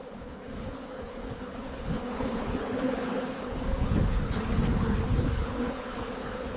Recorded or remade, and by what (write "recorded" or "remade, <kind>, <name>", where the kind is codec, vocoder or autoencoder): remade, codec, HILCodec